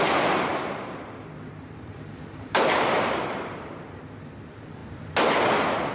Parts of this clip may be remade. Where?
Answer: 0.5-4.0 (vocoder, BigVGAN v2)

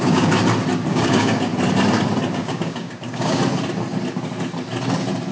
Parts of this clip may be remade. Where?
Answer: 0.0-0.4 (codec, DAC); 0.9-1.5; 2.3-3.4